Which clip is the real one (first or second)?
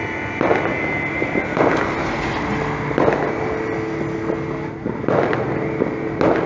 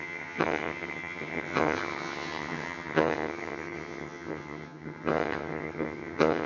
first